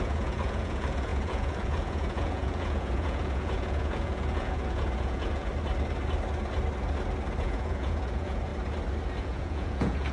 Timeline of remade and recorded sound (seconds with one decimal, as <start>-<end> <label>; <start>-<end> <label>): 0.0-5.5 remade; 5.5-7.4 recorded; 7.4-8.5 remade; 8.5-9.2 recorded; 9.2-10.1 remade